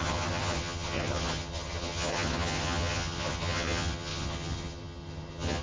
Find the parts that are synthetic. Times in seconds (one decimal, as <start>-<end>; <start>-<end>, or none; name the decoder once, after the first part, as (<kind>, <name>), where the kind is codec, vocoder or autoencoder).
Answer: 0.0-5.6 (vocoder, HiFi-GAN)